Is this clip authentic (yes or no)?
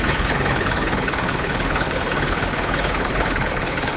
no